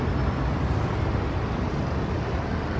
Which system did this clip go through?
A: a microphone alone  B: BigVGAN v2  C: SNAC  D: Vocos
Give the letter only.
A